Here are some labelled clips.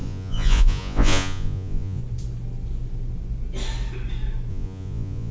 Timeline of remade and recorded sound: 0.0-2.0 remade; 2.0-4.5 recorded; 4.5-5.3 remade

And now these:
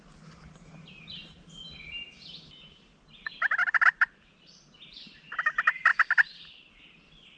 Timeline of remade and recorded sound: 0.0-7.4 recorded